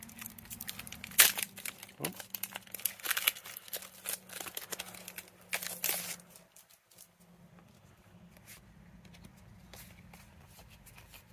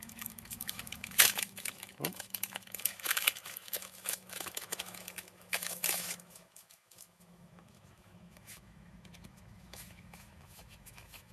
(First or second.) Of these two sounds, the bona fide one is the first